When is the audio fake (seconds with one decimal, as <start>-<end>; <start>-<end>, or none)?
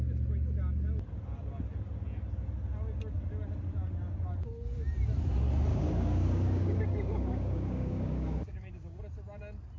5.7-9.0